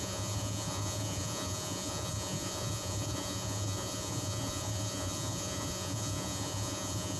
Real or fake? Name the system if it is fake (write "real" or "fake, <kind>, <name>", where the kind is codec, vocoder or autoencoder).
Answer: fake, vocoder, Vocos